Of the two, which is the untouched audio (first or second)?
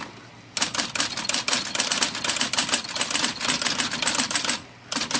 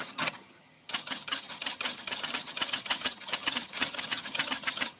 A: first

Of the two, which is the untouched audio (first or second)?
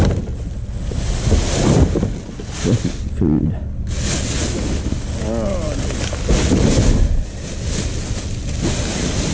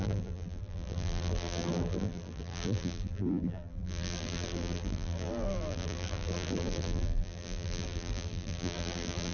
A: first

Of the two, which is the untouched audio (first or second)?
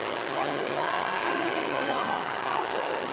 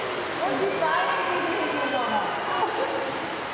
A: second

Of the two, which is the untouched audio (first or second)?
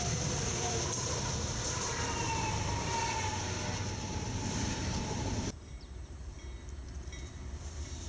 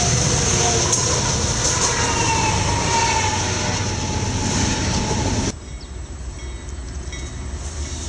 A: second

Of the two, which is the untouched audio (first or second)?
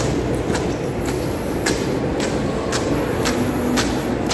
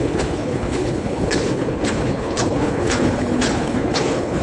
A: first